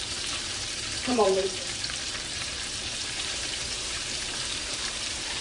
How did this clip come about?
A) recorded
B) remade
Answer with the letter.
B